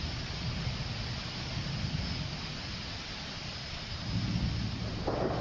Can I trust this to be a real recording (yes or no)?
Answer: yes